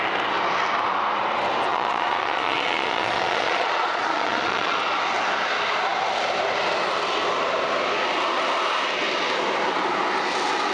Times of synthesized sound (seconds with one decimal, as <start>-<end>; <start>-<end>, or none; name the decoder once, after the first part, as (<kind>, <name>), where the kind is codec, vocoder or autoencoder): 1.7-4.8 (vocoder, Vocos)